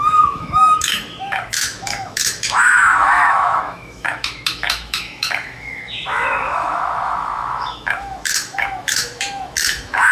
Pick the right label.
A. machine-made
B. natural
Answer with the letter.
A